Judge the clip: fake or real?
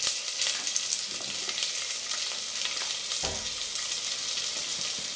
real